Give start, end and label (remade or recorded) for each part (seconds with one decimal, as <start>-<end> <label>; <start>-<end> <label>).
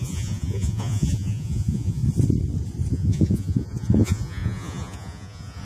0.0-2.0 remade; 2.0-2.9 recorded; 2.9-5.6 remade